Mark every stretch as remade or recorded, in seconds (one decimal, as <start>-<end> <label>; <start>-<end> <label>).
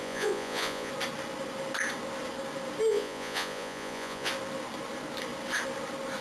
0.0-0.9 remade; 0.9-2.9 recorded; 2.9-4.3 remade; 4.3-6.2 recorded